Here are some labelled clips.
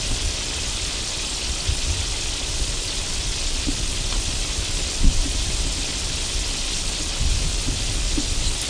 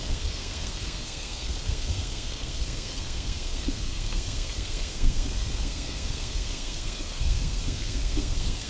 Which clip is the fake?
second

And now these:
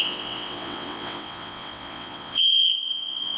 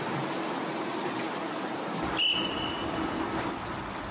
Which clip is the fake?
first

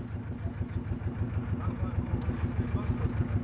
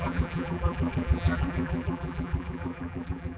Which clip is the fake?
second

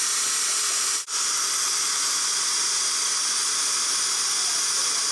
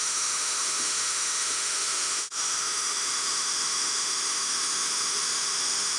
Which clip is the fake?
second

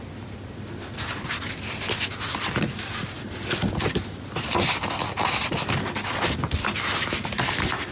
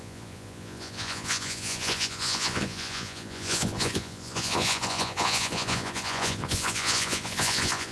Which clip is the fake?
second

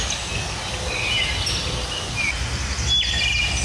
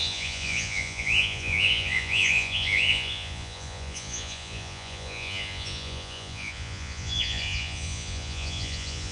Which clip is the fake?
second